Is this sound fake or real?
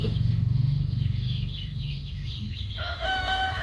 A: fake